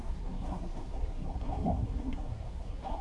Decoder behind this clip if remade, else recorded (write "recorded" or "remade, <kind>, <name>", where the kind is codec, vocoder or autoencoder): remade, codec, SNAC